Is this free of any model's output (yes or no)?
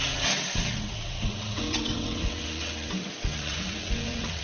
no